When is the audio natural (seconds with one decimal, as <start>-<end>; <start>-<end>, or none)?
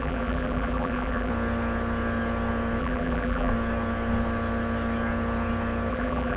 1.3-2.8; 3.5-5.9